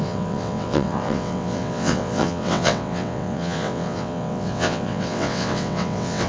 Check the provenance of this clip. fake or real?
fake